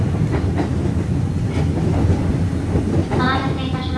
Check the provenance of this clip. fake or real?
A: real